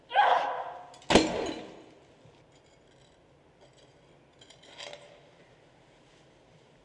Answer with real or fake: real